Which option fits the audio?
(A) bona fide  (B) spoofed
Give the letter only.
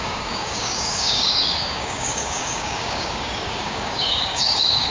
B